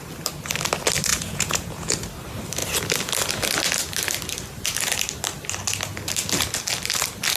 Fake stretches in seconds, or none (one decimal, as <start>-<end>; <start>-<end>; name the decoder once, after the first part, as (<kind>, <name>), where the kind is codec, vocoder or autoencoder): 1.1-1.9 (vocoder, Vocos)